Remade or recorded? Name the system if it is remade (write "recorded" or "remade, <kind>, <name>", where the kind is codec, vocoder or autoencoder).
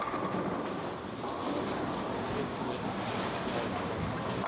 recorded